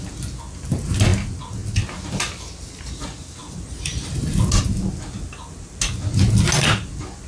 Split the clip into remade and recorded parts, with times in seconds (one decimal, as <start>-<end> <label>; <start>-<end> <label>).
0.0-3.4 recorded; 3.4-4.1 remade; 4.1-7.3 recorded